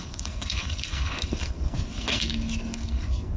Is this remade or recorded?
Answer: remade